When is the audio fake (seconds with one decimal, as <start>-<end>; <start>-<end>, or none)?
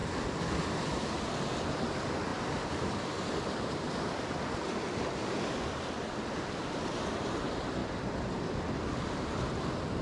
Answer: 2.3-7.3; 7.8-8.8